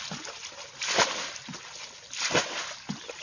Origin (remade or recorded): recorded